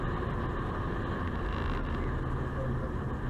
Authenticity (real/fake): real